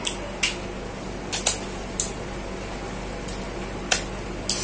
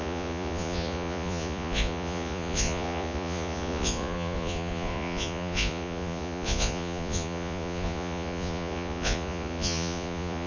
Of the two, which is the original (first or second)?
first